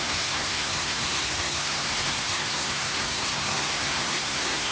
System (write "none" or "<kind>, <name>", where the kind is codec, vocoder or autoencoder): codec, SNAC